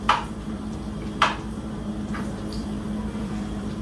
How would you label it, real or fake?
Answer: fake